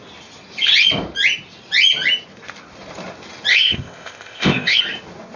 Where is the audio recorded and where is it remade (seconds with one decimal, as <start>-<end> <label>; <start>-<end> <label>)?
0.0-3.5 recorded; 3.5-4.8 remade; 4.8-5.4 recorded